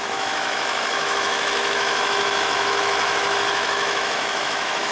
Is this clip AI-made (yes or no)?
yes